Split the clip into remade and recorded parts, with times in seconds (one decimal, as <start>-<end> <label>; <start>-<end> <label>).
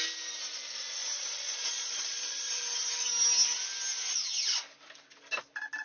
0.0-1.0 recorded; 1.0-2.6 remade; 2.6-5.8 recorded